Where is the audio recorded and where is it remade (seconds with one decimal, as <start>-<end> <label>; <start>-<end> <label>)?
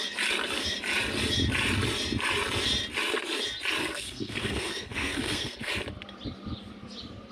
0.0-3.8 recorded; 3.8-5.7 remade; 5.7-7.3 recorded